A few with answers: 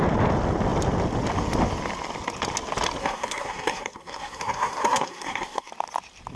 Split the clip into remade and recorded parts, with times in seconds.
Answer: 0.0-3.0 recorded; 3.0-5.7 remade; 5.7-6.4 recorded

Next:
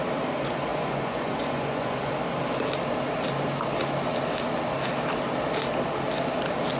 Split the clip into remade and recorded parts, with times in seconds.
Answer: 0.0-0.7 recorded; 0.7-2.1 remade; 2.1-6.8 recorded